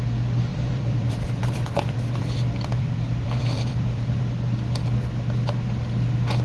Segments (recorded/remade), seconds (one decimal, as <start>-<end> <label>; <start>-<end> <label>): 0.0-0.5 recorded; 0.5-4.2 remade; 4.2-6.4 recorded